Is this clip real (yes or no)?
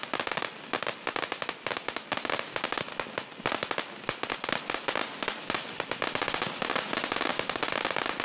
yes